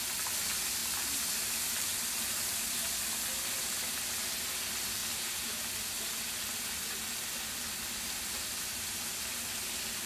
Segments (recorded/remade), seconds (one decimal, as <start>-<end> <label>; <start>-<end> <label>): 0.0-10.1 recorded